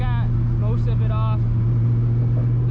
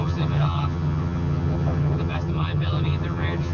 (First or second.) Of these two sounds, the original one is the first